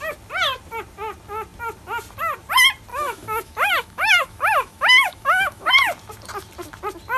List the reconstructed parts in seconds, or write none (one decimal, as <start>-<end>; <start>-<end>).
2.9-5.7